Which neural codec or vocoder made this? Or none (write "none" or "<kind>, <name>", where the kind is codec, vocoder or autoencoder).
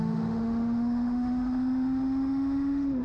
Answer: autoencoder, DAC-VAE